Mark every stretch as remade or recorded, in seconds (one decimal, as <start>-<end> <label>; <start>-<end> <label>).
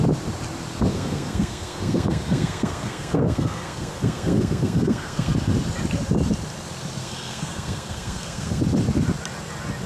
0.0-0.9 recorded; 0.9-5.3 remade; 5.3-7.0 recorded; 7.0-8.6 remade; 8.6-9.9 recorded